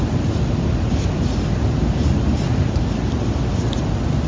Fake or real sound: real